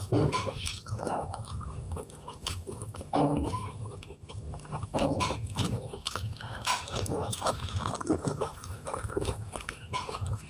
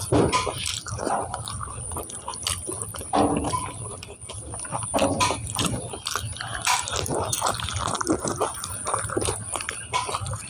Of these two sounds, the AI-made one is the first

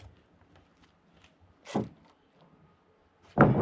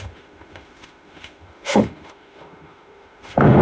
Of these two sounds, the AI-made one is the second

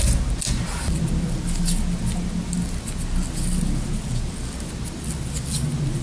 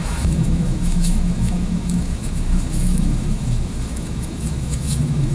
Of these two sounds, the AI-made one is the second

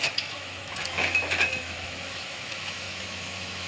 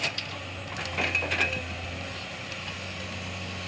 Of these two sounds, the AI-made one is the first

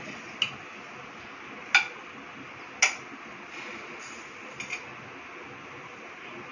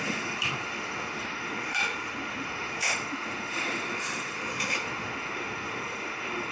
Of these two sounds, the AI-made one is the second